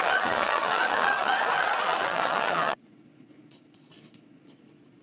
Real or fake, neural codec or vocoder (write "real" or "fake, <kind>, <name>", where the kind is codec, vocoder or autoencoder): fake, vocoder, Vocos